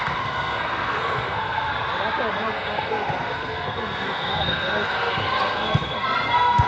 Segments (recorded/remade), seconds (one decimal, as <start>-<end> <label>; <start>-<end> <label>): 0.0-1.7 remade; 1.7-2.3 recorded; 2.3-6.7 remade